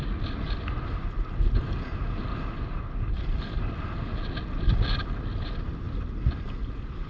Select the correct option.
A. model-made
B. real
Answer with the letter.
B